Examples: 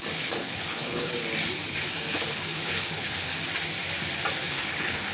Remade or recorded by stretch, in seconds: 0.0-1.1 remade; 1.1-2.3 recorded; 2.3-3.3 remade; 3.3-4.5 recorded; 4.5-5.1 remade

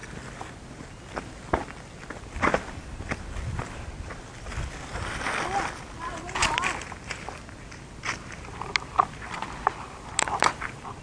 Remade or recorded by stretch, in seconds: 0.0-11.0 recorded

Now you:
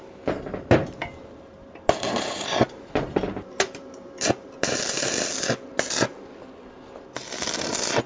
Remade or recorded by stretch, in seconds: 0.0-1.0 recorded; 1.0-5.2 remade; 5.2-8.1 recorded

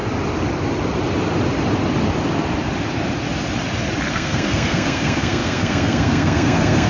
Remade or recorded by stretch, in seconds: 0.0-4.1 recorded; 4.1-6.9 remade

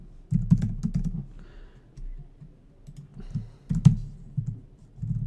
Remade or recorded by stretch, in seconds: 0.0-5.3 recorded

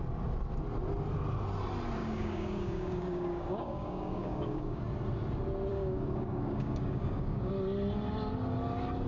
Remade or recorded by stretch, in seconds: 0.0-2.0 recorded; 2.0-4.8 remade; 4.8-5.7 recorded; 5.7-7.5 remade; 7.5-9.1 recorded

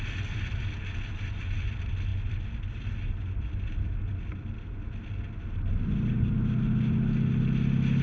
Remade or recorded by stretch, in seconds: 0.0-8.0 recorded

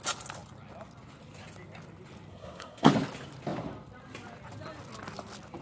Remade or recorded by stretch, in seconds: 0.0-2.3 recorded; 2.3-2.9 remade; 2.9-5.6 recorded